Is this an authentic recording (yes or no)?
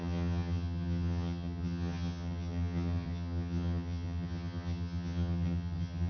no